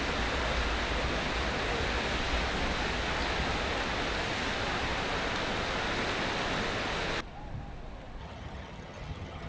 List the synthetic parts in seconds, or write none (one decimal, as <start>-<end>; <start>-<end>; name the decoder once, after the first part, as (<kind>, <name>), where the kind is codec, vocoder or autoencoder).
8.2-9.5 (vocoder, HiFi-GAN)